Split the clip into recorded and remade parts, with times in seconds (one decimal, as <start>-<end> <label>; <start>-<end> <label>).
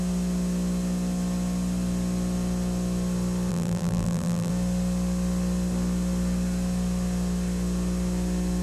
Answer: 0.0-3.5 recorded; 3.5-4.5 remade; 4.5-8.6 recorded